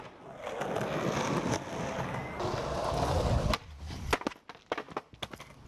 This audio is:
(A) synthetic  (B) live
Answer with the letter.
B